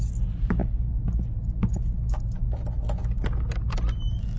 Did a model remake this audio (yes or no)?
no